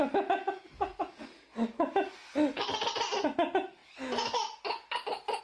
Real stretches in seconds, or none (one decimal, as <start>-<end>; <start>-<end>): 0.0-1.5; 2.1-5.4